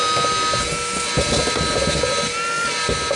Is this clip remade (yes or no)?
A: no